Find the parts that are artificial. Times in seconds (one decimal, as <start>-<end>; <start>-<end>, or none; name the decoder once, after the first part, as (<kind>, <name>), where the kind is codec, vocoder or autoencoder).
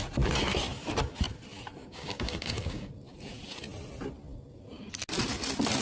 1.8-2.9 (codec, DAC)